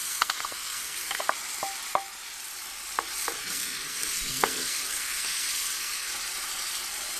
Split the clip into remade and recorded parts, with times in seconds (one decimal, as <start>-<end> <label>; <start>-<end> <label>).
0.0-1.2 remade; 1.2-3.4 recorded; 3.4-6.1 remade; 6.1-7.2 recorded